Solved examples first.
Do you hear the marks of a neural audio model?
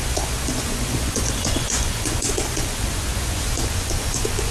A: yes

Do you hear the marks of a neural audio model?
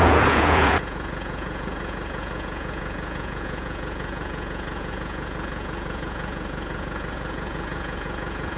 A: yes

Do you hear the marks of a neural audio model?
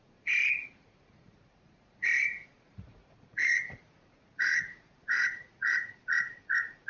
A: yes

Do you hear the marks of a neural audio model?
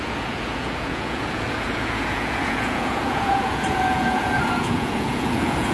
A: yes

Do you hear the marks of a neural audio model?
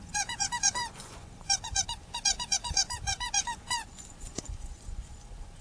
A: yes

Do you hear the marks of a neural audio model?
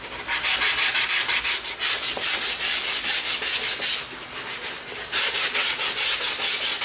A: no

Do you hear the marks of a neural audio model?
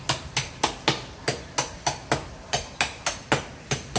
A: no